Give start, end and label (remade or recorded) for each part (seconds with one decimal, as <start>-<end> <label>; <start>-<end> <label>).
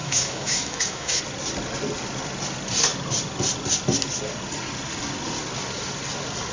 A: 0.0-1.2 remade; 1.2-6.5 recorded